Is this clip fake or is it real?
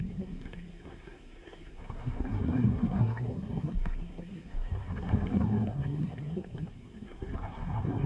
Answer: fake